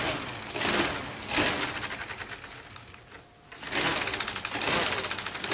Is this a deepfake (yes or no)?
no